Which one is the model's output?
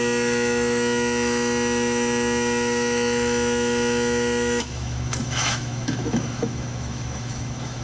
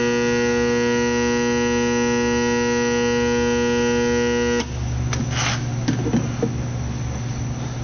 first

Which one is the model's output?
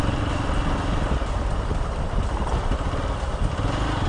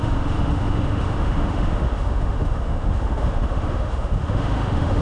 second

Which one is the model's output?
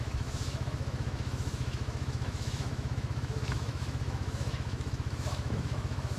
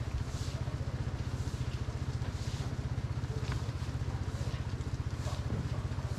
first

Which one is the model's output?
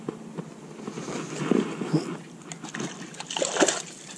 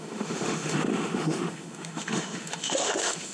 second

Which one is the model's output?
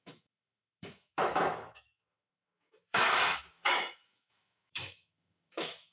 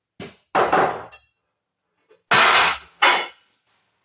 first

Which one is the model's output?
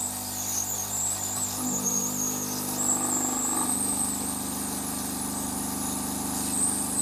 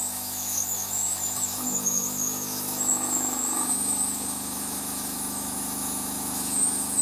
second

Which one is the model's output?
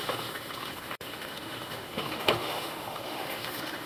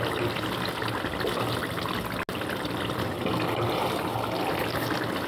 first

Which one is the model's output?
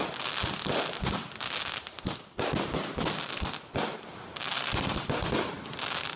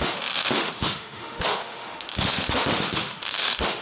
second